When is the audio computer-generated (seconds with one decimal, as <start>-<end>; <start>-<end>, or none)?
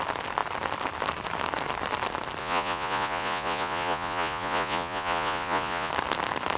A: 2.4-5.9